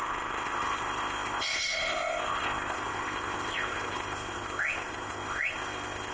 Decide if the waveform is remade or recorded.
remade